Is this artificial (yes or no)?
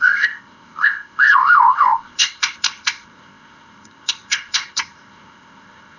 yes